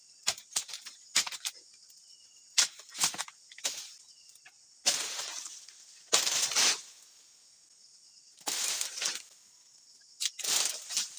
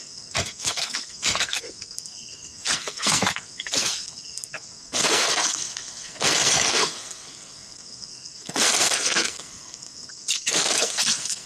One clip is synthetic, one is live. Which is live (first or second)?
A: first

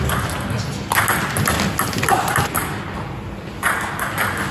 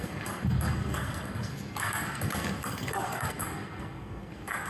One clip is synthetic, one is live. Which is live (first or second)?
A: first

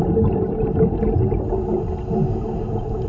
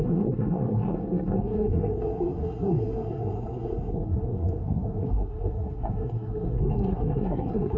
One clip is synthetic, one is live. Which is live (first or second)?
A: first